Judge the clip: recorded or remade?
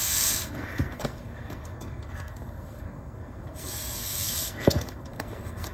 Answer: remade